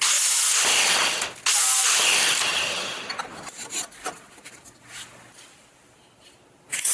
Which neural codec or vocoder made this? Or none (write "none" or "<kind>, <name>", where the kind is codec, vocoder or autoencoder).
none